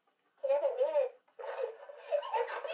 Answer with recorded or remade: recorded